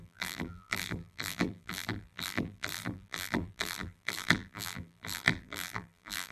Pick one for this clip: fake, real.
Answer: fake